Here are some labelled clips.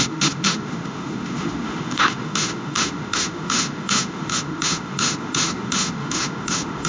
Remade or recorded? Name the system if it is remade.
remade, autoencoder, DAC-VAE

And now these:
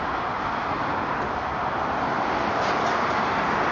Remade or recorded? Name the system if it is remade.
recorded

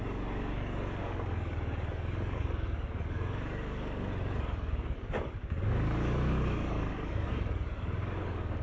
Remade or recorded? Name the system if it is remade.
remade, codec, DAC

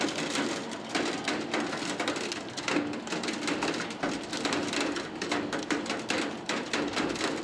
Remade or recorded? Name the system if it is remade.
recorded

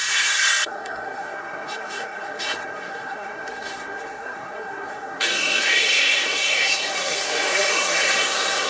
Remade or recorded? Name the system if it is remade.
remade, codec, SNAC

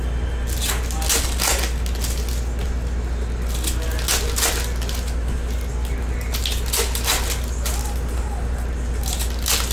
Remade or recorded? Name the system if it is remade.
recorded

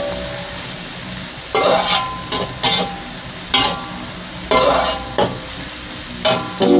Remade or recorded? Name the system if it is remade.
recorded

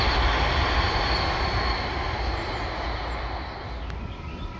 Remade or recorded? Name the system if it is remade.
recorded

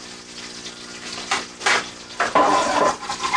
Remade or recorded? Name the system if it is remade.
recorded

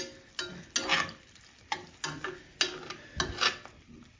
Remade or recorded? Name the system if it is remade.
recorded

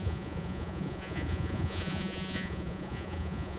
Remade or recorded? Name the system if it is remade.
remade, vocoder, Vocos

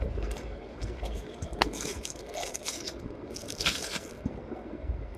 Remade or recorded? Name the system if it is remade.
remade, codec, SNAC